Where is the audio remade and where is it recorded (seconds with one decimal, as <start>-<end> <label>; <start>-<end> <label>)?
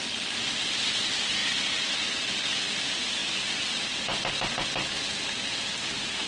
0.0-6.3 recorded